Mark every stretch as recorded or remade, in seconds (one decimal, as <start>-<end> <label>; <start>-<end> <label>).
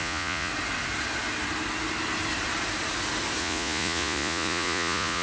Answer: 0.0-0.5 remade; 0.5-3.4 recorded; 3.4-5.2 remade